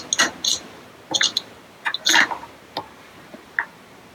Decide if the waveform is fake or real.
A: real